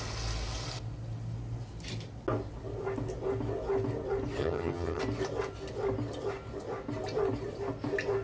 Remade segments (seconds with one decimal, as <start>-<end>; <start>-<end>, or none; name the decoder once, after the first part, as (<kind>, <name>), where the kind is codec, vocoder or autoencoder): 4.4-5.0 (vocoder, HiFi-GAN)